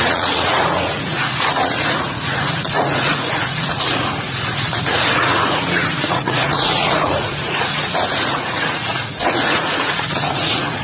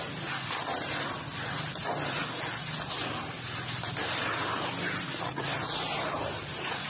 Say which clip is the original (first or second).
second